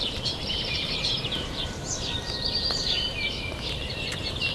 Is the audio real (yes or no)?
no